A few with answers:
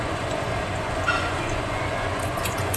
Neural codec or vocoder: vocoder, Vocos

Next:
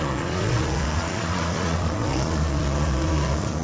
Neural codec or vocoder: vocoder, Vocos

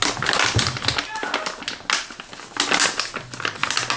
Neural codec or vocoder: none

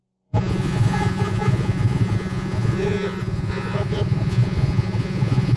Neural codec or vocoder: vocoder, Vocos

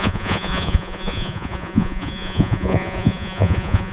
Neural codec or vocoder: vocoder, Vocos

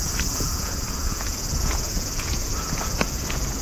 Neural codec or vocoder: vocoder, Vocos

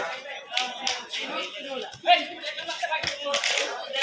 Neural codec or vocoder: none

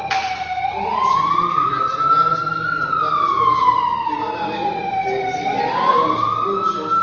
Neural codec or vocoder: none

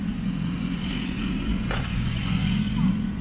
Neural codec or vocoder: vocoder, Vocos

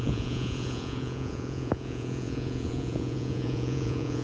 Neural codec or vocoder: vocoder, Vocos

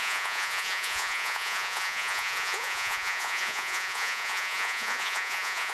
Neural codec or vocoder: vocoder, Vocos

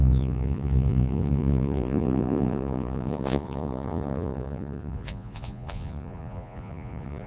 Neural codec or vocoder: vocoder, Vocos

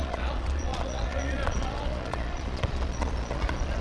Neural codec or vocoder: vocoder, Vocos